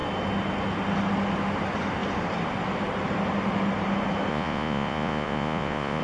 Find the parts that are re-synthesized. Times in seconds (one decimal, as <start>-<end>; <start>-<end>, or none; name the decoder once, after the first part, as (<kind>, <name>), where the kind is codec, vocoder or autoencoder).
4.3-6.0 (vocoder, Vocos)